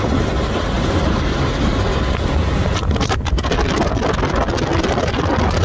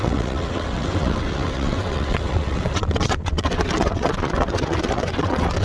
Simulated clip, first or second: second